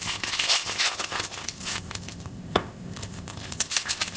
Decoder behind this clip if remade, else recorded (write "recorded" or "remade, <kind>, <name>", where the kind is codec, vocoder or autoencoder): remade, codec, ZipCodec